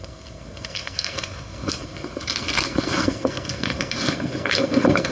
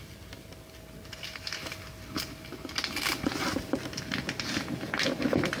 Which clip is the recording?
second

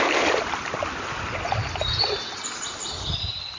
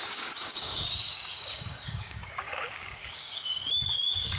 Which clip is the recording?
first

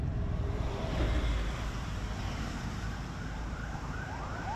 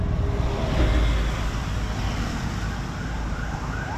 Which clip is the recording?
second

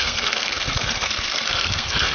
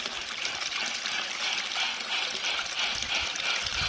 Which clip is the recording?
second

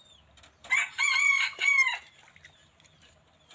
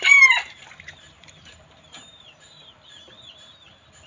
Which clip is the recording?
first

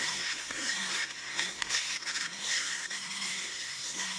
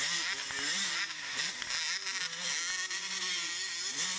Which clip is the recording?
second